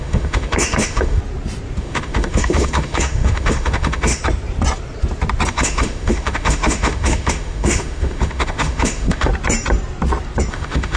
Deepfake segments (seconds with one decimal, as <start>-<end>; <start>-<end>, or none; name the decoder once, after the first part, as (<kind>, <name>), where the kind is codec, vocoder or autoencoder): 0.0-1.2 (autoencoder, DAC-VAE); 1.8-4.2; 5.5-9.3; 10.5-11.0

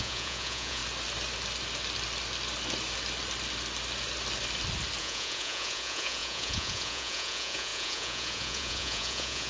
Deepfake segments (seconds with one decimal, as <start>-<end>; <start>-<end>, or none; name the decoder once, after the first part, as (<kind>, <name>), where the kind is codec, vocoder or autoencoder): 0.0-0.8 (vocoder, Vocos); 5.0-9.5

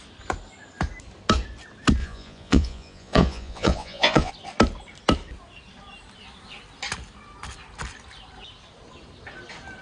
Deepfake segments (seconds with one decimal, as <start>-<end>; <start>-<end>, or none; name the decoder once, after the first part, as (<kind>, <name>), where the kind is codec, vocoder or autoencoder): 2.0-4.3 (vocoder, Vocos)

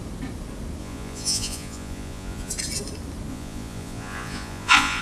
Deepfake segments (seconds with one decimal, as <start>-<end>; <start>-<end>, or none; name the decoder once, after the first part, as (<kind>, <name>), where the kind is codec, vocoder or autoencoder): 0.8-2.5 (vocoder, Vocos); 3.3-5.0

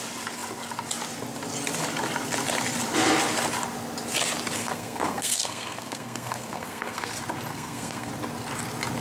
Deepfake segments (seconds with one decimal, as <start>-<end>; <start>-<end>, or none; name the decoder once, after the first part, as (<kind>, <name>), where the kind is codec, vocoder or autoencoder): 4.6-7.1 (codec, SNAC); 7.5-8.1

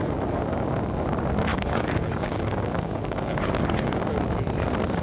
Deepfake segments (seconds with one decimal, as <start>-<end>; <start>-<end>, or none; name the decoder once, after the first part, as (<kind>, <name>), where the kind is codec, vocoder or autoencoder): 1.5-4.0 (codec, DAC)

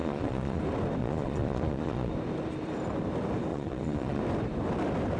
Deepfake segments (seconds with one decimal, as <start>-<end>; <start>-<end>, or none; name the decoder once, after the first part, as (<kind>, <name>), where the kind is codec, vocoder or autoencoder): 0.0-0.6 (vocoder, Vocos); 1.0-2.1; 3.5-4.2

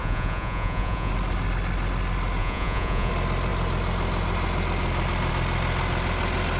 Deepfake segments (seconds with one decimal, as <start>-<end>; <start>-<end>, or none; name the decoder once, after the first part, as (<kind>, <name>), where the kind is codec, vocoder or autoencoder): 0.0-1.1 (vocoder, Vocos); 2.4-3.1